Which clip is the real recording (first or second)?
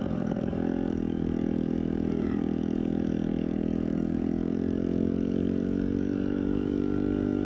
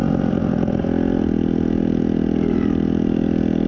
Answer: second